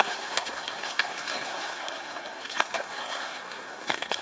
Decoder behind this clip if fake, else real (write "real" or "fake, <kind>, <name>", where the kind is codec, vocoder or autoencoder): fake, codec, SNAC